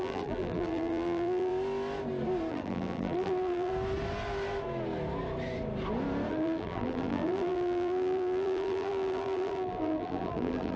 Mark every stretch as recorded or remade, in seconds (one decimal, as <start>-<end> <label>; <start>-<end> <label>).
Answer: 0.0-1.5 remade; 1.5-2.5 recorded; 2.5-3.7 remade; 3.7-6.3 recorded; 6.3-10.8 remade

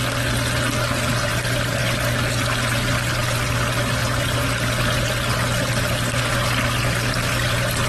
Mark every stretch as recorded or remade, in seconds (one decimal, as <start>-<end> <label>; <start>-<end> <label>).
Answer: 0.0-1.3 recorded; 1.3-7.9 remade

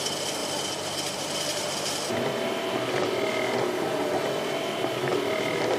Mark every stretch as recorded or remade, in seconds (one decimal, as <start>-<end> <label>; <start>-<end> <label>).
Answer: 0.0-0.4 recorded; 0.4-2.1 remade; 2.1-5.8 recorded

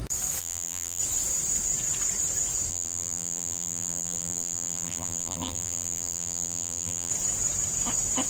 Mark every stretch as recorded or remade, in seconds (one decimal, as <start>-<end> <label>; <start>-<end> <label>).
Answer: 0.0-0.4 recorded; 0.4-1.0 remade; 1.0-2.7 recorded; 2.7-7.1 remade; 7.1-8.3 recorded

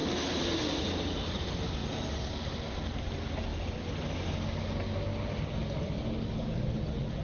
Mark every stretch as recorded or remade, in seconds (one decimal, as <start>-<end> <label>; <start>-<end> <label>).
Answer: 0.0-7.2 recorded

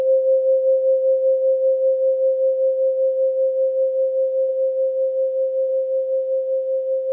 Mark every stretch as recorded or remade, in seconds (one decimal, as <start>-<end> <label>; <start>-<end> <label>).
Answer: 0.0-7.1 recorded